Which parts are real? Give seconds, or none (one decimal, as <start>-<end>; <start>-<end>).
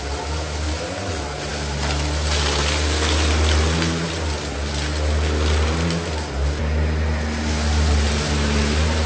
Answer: 0.0-9.1